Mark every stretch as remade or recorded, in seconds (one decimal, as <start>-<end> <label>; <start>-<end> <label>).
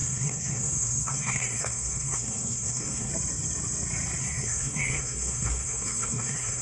0.0-3.1 remade; 3.1-4.2 recorded; 4.2-6.6 remade